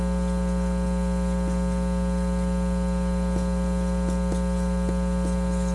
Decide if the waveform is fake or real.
real